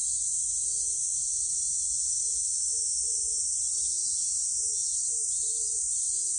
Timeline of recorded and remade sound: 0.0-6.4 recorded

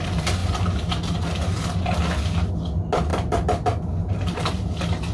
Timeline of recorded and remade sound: 0.0-3.1 recorded; 3.1-4.5 remade; 4.5-5.1 recorded

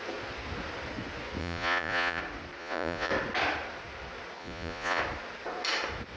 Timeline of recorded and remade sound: 0.0-1.4 recorded; 1.4-2.2 remade; 2.2-2.6 recorded; 2.6-3.1 remade; 3.1-4.4 recorded; 4.4-5.0 remade; 5.0-6.2 recorded